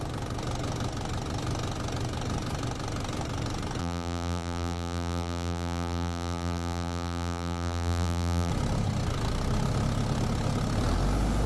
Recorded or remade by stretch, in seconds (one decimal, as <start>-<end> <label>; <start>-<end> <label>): 0.0-3.8 recorded; 3.8-8.5 remade; 8.5-11.5 recorded